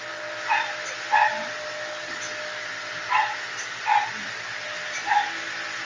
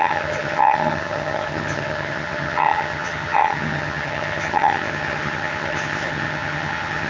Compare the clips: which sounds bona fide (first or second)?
first